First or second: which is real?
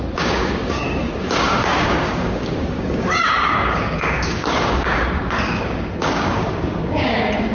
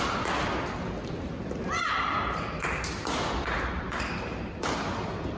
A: second